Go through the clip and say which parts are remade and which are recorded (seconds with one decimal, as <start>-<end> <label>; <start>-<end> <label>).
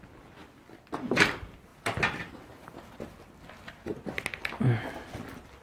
0.0-5.6 recorded